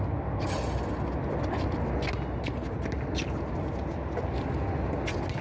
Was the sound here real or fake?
real